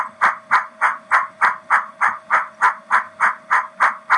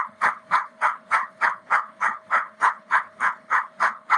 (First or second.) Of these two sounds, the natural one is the first